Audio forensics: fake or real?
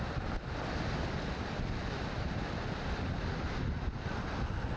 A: real